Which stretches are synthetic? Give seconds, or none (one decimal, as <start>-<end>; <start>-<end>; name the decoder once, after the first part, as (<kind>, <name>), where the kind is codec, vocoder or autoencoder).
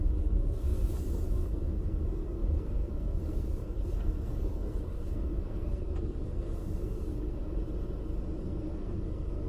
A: 0.0-7.4 (codec, SNAC); 8.4-9.5